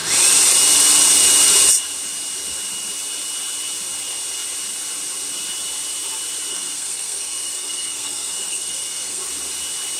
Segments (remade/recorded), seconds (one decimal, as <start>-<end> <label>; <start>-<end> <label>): 0.0-6.5 recorded; 6.5-9.2 remade; 9.2-10.0 recorded